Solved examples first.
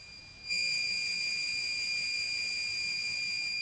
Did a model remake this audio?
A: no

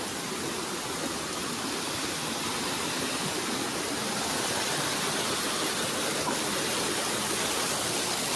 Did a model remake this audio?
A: no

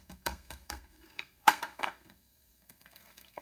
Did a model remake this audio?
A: yes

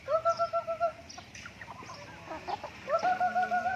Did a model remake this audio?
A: no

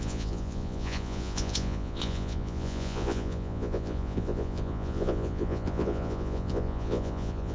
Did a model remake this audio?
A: yes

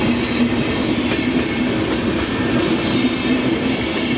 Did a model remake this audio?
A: no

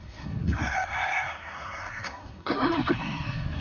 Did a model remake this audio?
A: yes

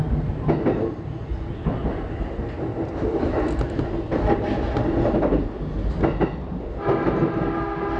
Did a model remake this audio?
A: no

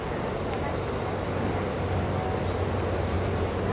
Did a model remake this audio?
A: no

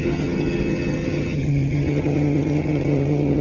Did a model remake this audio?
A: yes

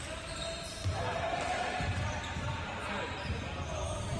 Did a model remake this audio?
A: yes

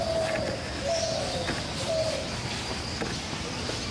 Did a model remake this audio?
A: no